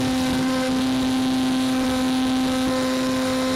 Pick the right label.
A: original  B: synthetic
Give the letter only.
A